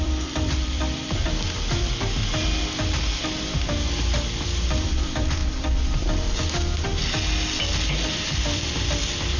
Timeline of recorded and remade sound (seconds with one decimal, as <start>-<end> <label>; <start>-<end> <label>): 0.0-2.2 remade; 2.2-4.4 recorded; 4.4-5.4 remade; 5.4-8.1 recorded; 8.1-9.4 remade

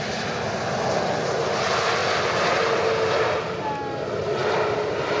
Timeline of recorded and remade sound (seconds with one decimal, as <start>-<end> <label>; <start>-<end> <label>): 0.0-5.2 recorded

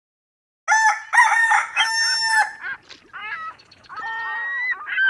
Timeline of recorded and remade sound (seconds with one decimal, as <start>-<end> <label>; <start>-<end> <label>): 0.0-1.4 recorded; 1.4-2.0 remade; 2.0-3.2 recorded; 3.2-4.0 remade; 4.0-5.1 recorded